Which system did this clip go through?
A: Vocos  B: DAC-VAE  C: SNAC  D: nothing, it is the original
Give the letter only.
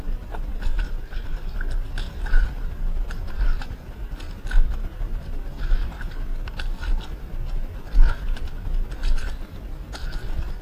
D